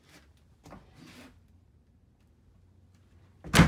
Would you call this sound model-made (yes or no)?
no